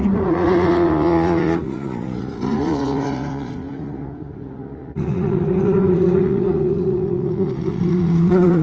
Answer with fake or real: fake